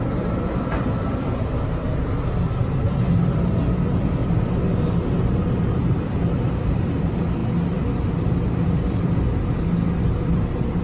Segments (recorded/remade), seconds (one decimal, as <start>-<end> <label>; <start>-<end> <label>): 0.0-4.2 remade; 4.2-5.5 recorded; 5.5-7.4 remade; 7.4-8.3 recorded; 8.3-10.8 remade